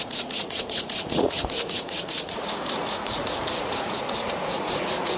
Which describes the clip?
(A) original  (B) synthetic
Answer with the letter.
B